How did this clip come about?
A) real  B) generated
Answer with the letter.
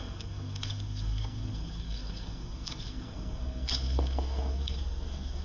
B